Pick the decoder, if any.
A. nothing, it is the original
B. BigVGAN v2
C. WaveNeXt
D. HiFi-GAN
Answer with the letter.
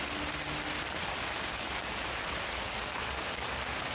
A